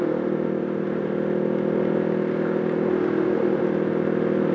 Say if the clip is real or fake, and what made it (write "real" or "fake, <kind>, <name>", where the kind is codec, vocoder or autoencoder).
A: real